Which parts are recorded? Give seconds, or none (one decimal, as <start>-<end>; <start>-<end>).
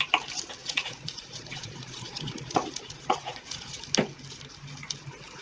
0.0-0.6; 3.8-5.4